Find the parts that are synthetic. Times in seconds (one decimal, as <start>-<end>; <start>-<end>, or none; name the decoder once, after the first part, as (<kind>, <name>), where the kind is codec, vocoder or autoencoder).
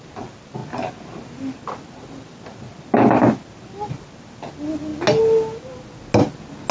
none